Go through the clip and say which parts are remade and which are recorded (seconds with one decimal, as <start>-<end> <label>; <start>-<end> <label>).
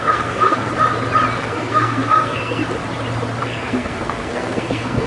0.0-0.7 remade; 0.7-1.4 recorded; 1.4-2.6 remade; 2.6-3.4 recorded; 3.4-5.1 remade